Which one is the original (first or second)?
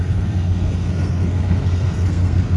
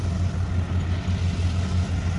second